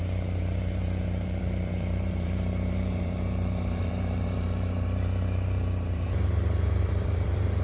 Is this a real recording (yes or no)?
no